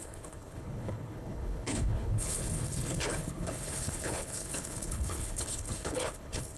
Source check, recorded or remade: remade